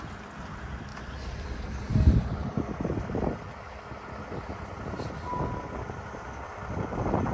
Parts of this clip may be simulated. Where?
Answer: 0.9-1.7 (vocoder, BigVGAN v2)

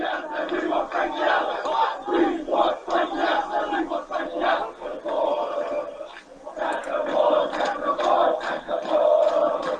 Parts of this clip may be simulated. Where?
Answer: 2.5-3.8 (vocoder, BigVGAN v2)

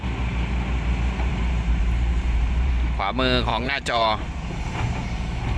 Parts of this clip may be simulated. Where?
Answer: 1.3-2.7 (vocoder, BigVGAN v2); 3.5-5.6

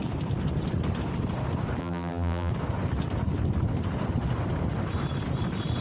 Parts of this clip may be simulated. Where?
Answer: 1.8-2.5 (vocoder, BigVGAN v2)

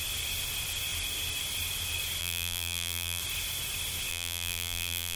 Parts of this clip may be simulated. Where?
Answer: 2.2-3.2 (vocoder, BigVGAN v2); 4.1-5.2

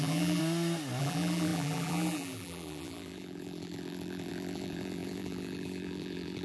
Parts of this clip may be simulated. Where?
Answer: 0.0-0.4 (vocoder, BigVGAN v2); 1.0-6.4